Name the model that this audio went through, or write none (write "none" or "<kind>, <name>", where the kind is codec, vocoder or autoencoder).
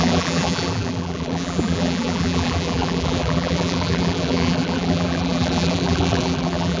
vocoder, BigVGAN v2